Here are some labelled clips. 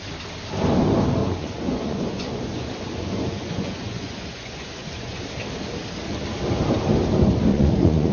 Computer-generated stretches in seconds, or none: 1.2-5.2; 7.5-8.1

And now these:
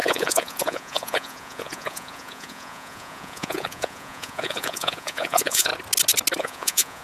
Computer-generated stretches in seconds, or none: 0.0-5.7; 6.4-7.0

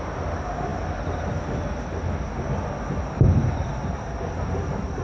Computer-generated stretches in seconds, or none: none

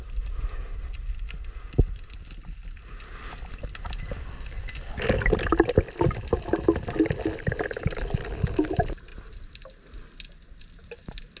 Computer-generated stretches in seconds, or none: none

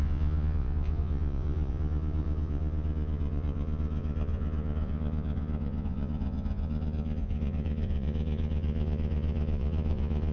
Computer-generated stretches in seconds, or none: 0.0-10.3

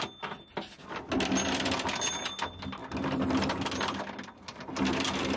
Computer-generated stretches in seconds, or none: none